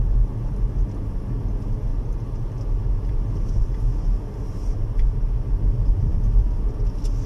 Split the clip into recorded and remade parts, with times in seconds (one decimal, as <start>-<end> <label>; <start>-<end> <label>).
0.0-7.3 recorded